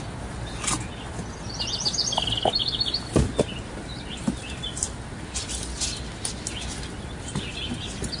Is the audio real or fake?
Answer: real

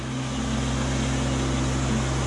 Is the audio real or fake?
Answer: real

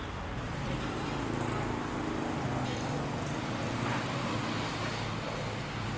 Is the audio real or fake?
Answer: real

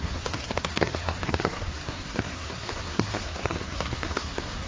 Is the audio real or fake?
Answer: fake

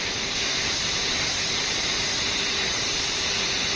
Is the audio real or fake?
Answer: fake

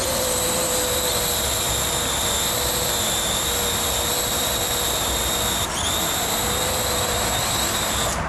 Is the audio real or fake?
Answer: real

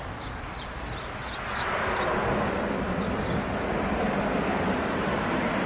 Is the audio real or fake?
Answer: real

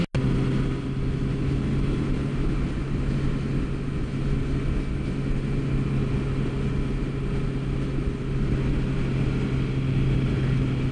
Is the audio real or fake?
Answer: real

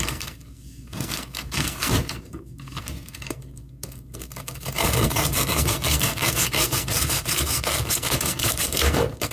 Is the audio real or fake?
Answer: fake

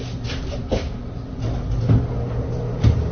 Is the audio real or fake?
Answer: real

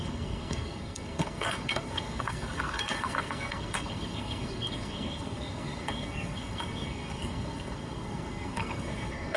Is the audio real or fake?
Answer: fake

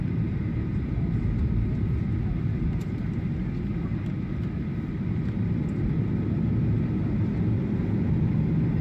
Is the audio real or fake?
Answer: real